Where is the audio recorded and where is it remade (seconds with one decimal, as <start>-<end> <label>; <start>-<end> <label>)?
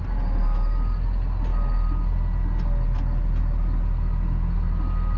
0.0-5.2 recorded